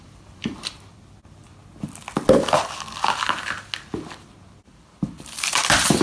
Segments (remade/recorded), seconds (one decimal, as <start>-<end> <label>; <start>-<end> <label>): 0.0-1.6 remade; 1.6-4.7 recorded; 4.7-6.0 remade